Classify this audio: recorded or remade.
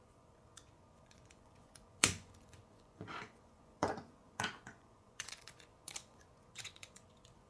remade